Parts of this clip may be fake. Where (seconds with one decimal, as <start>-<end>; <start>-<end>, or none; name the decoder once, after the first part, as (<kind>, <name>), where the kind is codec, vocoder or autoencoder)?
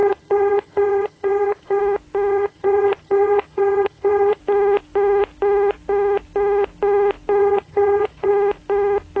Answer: 0.0-1.8 (vocoder, HiFi-GAN); 2.3-4.4; 7.4-8.3